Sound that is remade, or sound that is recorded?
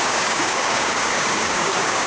remade